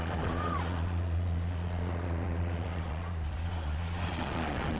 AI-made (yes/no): yes